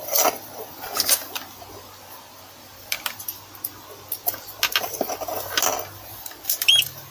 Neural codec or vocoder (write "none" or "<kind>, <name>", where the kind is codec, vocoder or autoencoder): none